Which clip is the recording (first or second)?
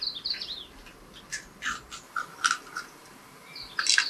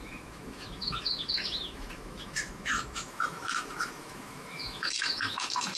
first